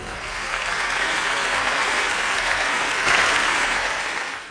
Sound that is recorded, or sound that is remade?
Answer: remade